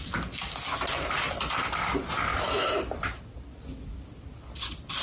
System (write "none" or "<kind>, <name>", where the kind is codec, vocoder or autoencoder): none